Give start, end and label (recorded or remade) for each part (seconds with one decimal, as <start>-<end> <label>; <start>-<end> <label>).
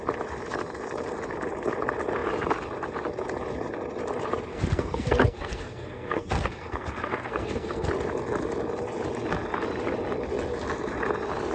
0.0-4.5 recorded; 4.5-7.9 remade; 7.9-11.5 recorded